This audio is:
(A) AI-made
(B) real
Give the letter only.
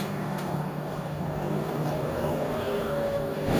A